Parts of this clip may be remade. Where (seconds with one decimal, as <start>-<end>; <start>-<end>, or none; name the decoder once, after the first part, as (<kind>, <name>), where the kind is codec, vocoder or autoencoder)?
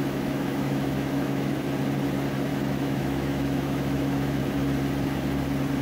0.0-1.5 (autoencoder, DAC-VAE); 2.5-4.4